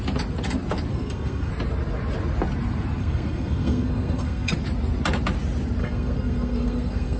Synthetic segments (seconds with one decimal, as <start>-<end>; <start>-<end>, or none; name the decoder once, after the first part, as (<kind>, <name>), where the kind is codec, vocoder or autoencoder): 0.9-1.5 (codec, SNAC); 3.0-4.5; 5.8-7.2